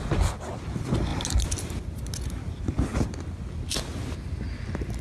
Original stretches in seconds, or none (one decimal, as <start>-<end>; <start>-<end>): 0.0-5.0